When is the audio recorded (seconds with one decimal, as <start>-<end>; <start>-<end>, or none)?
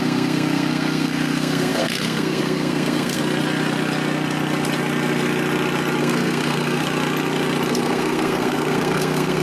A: 3.2-6.0; 6.8-7.7